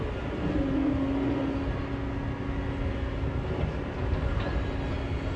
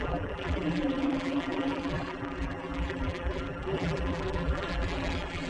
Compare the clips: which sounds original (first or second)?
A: first